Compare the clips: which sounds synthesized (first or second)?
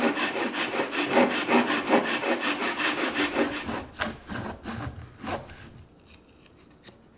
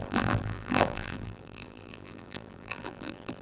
second